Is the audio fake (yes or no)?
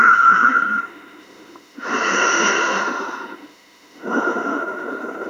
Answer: yes